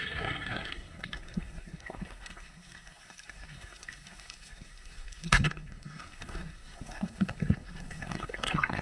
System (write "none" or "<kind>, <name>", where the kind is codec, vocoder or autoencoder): codec, SNAC